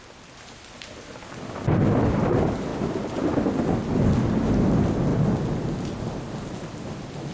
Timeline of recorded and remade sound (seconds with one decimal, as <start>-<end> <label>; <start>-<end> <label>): 0.0-7.3 recorded